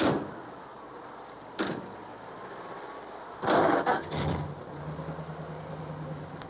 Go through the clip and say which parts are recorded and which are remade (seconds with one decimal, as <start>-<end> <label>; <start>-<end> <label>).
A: 0.0-6.5 recorded